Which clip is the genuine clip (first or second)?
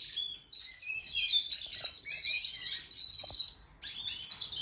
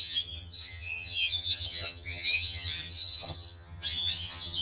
first